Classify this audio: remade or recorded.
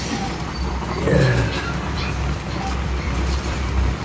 remade